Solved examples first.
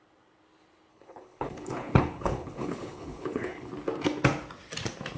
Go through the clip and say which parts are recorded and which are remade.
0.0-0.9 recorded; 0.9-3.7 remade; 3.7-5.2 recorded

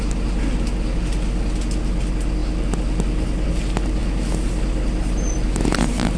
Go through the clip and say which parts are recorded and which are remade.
0.0-6.2 recorded

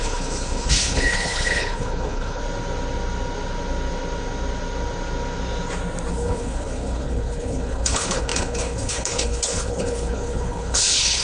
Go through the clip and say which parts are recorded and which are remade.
0.0-2.4 remade; 2.4-6.1 recorded; 6.1-11.2 remade

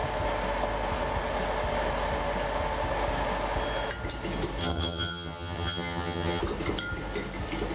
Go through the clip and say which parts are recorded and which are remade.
0.0-4.6 recorded; 4.6-6.4 remade; 6.4-7.7 recorded

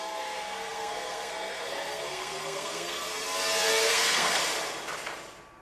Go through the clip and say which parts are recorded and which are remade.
0.0-3.1 remade; 3.1-3.9 recorded; 3.9-4.4 remade; 4.4-5.6 recorded

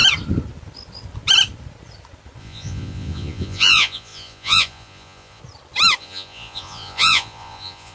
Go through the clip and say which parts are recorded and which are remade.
0.0-2.4 recorded; 2.4-5.4 remade; 5.4-6.0 recorded; 6.0-7.9 remade

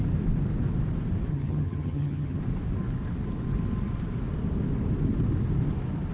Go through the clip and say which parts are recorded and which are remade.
0.0-1.3 recorded; 1.3-2.4 remade; 2.4-6.1 recorded

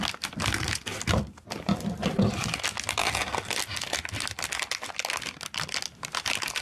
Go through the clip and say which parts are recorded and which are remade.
0.0-6.6 recorded